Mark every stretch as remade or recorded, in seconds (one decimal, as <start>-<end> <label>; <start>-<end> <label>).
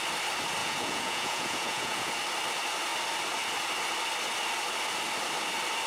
0.0-0.6 recorded; 0.6-2.1 remade; 2.1-5.9 recorded